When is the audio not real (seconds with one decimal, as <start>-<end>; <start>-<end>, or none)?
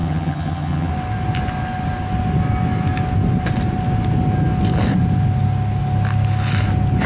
0.0-0.9